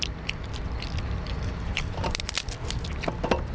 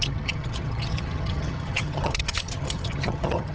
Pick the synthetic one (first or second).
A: second